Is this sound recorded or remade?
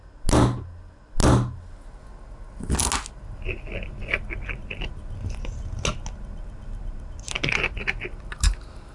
recorded